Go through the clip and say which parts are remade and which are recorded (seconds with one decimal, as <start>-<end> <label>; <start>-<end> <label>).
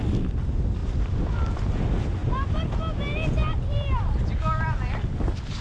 0.0-0.8 recorded; 0.8-1.7 remade; 1.7-2.2 recorded; 2.2-2.7 remade; 2.7-3.4 recorded; 3.4-4.0 remade; 4.0-5.6 recorded